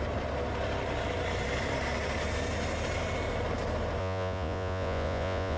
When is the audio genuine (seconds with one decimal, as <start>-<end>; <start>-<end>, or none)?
0.0-4.0